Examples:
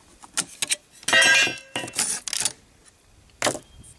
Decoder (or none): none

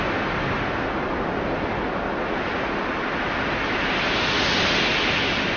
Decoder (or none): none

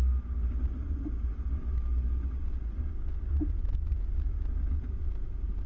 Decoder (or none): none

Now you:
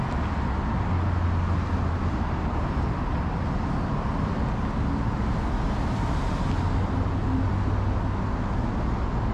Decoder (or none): none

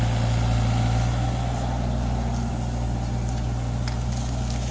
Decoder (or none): none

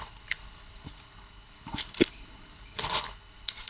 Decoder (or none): codec, HILCodec